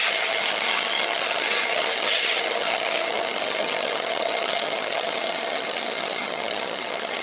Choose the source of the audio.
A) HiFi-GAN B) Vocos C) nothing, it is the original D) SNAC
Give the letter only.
A